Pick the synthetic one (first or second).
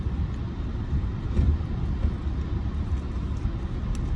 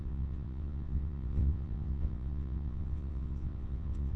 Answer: second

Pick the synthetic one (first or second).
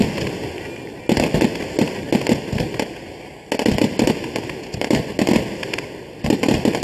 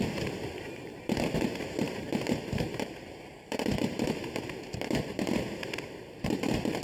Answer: second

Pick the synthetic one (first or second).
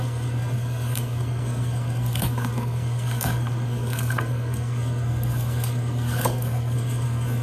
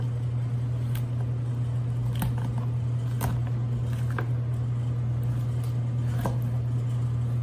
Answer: first